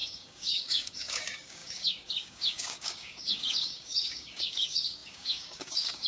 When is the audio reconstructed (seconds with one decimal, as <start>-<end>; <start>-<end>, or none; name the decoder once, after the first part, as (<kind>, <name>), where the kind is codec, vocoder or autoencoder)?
0.0-6.1 (codec, DAC)